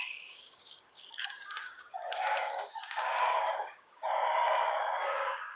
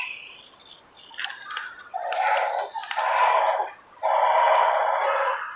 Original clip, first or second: second